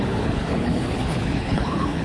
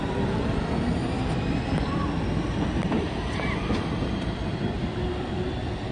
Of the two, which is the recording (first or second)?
second